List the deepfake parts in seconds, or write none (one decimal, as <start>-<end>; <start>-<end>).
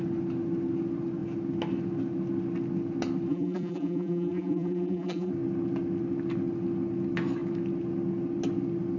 3.3-5.3